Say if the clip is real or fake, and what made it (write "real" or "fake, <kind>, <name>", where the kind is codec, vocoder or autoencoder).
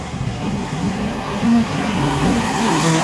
fake, codec, SNAC